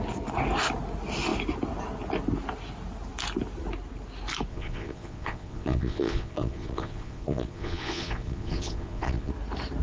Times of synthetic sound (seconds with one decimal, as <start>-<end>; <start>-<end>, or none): 4.5-9.3